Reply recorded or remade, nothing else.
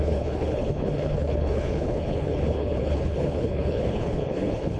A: remade